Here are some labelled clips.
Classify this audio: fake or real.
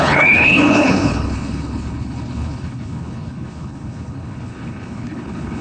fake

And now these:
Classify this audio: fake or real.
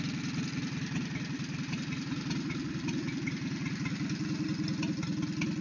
real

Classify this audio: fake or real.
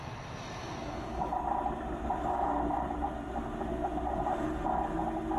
real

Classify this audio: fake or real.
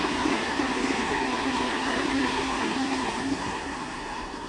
fake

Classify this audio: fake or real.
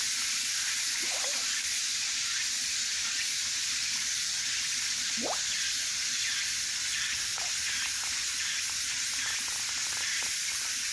real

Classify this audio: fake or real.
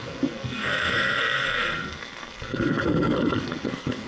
fake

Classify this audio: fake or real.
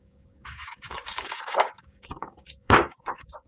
fake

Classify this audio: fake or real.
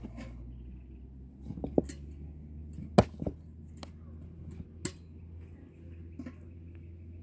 real